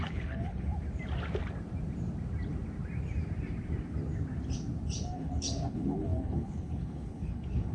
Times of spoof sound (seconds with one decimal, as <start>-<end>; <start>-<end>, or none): 0.0-0.7; 5.0-7.7